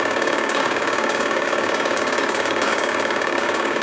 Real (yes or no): no